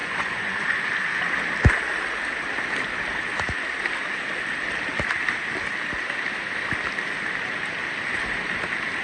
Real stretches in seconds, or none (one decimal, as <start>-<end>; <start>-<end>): 0.8-9.0